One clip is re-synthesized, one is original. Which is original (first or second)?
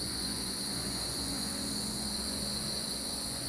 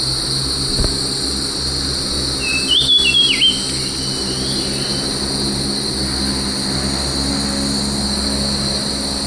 second